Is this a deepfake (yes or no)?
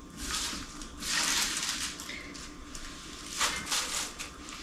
yes